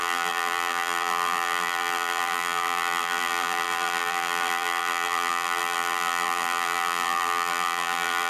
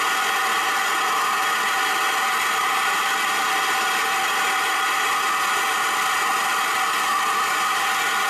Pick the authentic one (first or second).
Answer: second